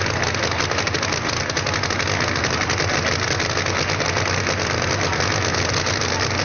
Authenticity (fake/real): real